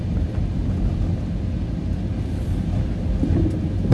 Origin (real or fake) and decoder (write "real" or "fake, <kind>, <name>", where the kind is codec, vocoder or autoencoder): real